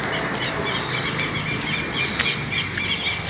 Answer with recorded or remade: recorded